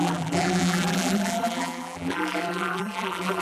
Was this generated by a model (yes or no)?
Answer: yes